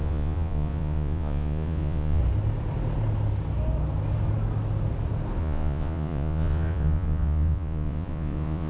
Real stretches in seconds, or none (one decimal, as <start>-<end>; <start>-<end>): 2.2-5.4